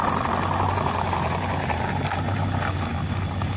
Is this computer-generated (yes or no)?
no